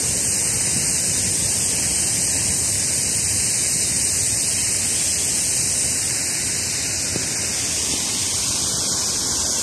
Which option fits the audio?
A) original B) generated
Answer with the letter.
A